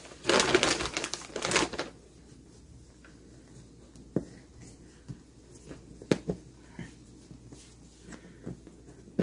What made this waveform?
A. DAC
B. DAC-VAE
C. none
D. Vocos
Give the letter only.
C